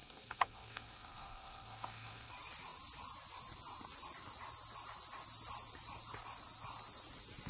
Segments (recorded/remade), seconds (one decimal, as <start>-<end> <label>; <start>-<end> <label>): 0.0-2.3 remade; 2.3-7.5 recorded